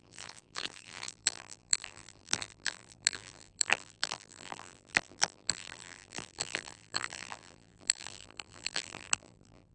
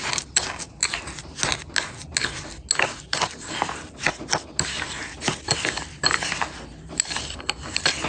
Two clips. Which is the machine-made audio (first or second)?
first